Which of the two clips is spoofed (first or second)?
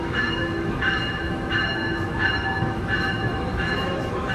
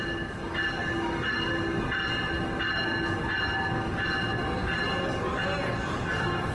first